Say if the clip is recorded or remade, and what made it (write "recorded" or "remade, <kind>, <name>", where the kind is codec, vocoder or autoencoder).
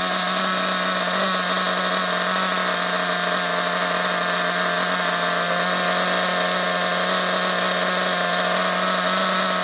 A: recorded